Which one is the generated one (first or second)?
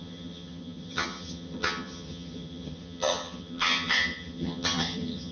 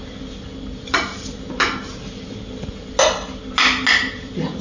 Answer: first